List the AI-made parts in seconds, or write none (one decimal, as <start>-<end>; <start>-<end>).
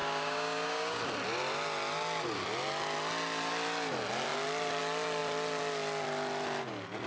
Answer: 0.0-1.0